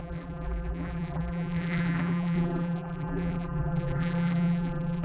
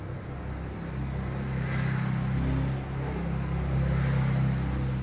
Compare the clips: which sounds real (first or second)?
second